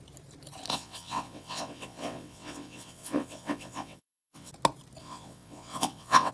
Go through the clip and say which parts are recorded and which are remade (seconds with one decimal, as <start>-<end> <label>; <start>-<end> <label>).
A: 0.0-0.7 recorded; 0.7-4.5 remade; 4.5-5.0 recorded; 5.0-6.3 remade